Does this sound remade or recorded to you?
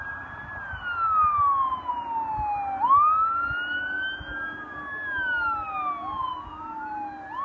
recorded